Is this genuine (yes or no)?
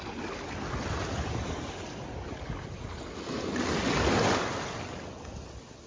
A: yes